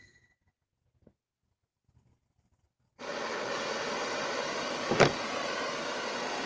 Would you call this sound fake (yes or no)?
no